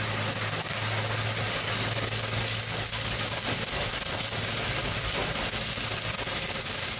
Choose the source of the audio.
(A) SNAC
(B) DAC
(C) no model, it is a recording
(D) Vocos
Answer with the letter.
C